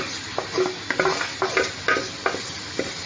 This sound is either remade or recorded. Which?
recorded